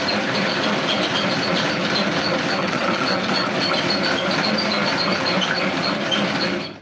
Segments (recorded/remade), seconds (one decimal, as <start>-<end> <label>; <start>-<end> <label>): 0.0-2.6 recorded; 2.6-3.5 remade; 3.5-6.8 recorded